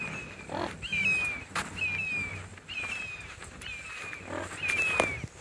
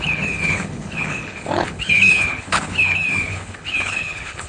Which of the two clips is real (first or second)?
first